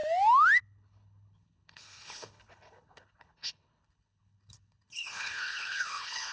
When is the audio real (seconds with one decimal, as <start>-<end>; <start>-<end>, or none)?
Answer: 0.0-0.6